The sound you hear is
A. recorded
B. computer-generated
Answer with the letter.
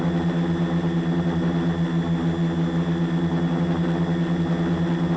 A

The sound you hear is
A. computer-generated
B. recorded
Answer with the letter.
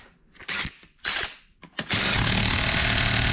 B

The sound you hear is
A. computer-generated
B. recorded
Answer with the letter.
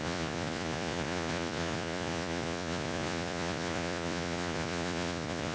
A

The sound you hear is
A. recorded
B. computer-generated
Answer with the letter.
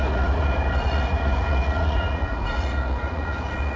B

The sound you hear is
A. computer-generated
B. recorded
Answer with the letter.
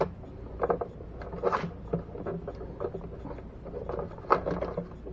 B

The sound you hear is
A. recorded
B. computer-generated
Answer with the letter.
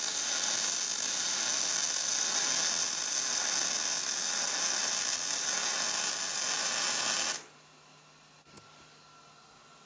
A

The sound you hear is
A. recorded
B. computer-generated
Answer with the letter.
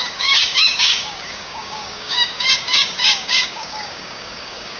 B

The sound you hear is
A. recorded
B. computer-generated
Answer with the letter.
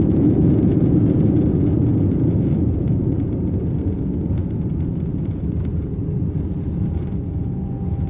B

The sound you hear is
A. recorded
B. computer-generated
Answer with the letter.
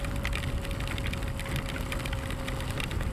A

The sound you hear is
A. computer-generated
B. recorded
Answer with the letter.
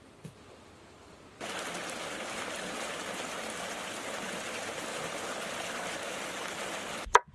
B